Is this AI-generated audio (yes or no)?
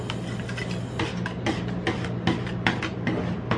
no